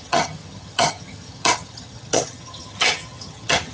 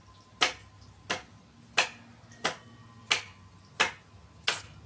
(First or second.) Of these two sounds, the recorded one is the second